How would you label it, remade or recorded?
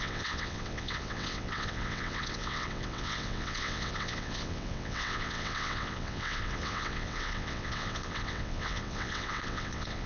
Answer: remade